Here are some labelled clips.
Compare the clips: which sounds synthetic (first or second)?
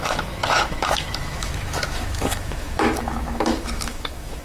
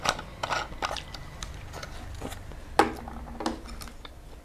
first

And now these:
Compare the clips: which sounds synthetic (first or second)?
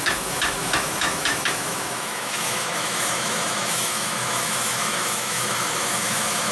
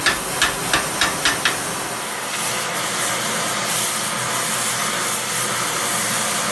first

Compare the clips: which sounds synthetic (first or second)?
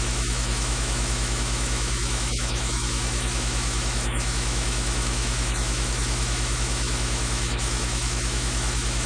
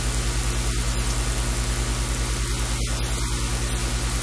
first